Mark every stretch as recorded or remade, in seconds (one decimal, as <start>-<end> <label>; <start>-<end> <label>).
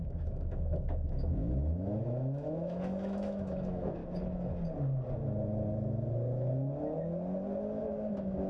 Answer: 0.0-4.0 remade; 4.0-7.8 recorded; 7.8-8.5 remade